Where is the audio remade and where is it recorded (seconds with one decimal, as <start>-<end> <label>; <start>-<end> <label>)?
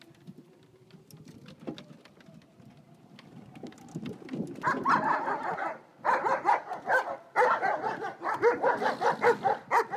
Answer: 0.0-10.0 recorded